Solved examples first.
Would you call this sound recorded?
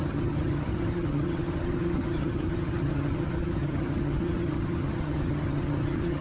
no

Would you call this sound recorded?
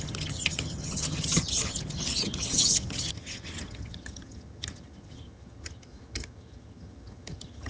no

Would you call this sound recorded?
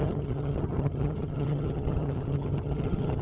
no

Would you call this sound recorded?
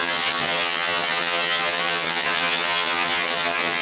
no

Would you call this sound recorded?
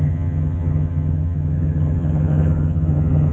no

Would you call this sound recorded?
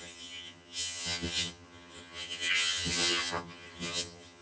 no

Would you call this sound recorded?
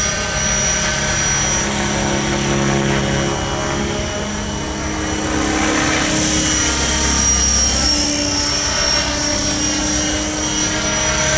yes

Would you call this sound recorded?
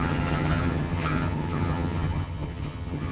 no